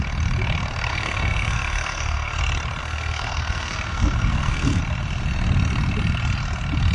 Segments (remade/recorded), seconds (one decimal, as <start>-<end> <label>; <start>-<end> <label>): 0.0-0.9 recorded; 0.9-2.4 remade; 2.4-2.8 recorded; 2.8-4.8 remade; 4.8-6.9 recorded